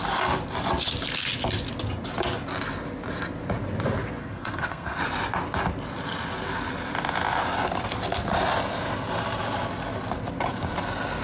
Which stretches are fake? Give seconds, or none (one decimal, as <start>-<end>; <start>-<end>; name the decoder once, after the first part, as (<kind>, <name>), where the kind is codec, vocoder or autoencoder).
4.2-5.0 (codec, SNAC)